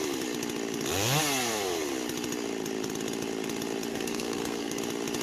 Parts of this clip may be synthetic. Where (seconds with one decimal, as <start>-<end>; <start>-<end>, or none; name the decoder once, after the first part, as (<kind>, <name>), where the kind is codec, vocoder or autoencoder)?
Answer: 3.9-4.8 (codec, SNAC)